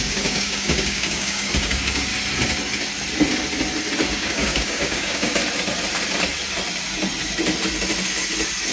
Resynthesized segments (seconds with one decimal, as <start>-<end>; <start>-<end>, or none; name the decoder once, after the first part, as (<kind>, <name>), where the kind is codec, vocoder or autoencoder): 0.0-2.1 (codec, DAC); 4.1-5.4